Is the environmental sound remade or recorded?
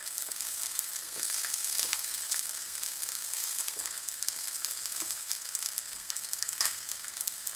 remade